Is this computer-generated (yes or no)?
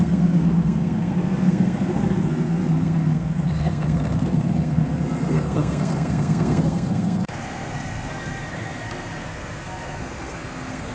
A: yes